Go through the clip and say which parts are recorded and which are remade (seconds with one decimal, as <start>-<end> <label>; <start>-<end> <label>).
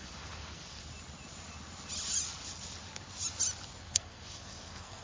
0.0-0.8 remade; 0.8-3.8 recorded; 3.8-5.0 remade